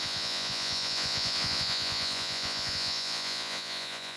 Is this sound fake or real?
fake